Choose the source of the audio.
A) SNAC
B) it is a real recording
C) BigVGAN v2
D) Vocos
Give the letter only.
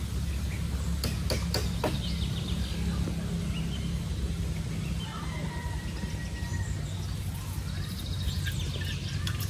B